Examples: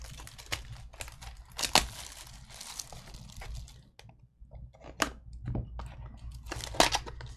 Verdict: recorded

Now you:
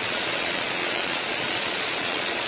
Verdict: remade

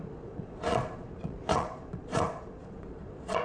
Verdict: remade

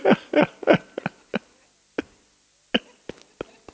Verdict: recorded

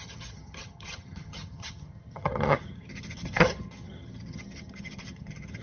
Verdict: remade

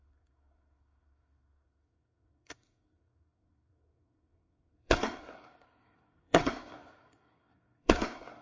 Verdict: remade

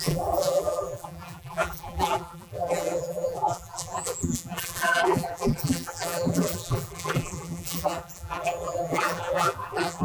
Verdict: remade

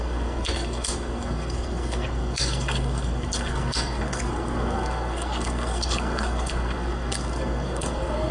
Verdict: remade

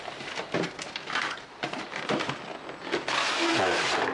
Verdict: recorded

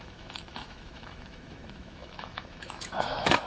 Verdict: remade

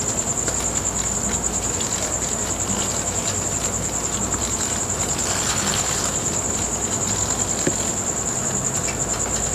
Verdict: recorded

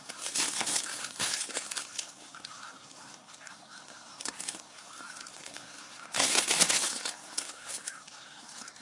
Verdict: remade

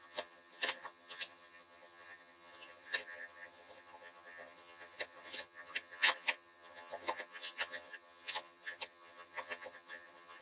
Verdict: remade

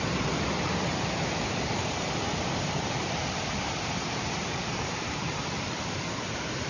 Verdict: remade